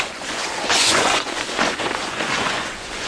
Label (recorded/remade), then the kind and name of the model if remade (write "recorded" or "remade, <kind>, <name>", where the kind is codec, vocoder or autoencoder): remade, vocoder, Vocos